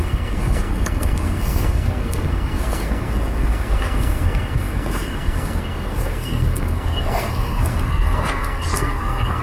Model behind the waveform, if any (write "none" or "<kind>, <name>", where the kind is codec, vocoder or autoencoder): codec, SNAC